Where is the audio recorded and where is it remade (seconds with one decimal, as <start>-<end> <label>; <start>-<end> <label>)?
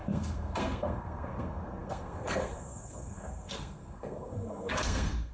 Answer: 0.0-5.3 remade